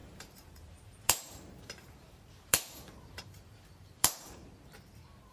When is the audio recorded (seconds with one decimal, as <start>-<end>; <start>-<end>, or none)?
4.4-5.3